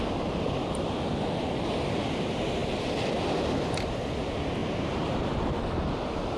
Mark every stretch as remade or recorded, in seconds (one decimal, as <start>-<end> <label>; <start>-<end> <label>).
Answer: 0.0-4.6 recorded; 4.6-5.2 remade; 5.2-6.4 recorded